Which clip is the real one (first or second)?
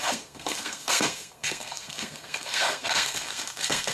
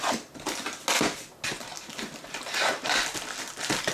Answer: second